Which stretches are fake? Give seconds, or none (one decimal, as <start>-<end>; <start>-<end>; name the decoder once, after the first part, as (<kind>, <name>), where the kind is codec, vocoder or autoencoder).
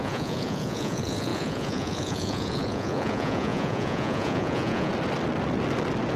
0.0-4.9 (vocoder, Vocos)